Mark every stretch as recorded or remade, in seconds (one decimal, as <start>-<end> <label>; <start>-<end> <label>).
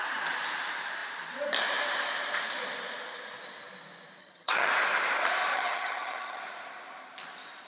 0.0-4.2 recorded; 4.2-4.7 remade; 4.7-5.5 recorded; 5.5-6.4 remade; 6.4-7.7 recorded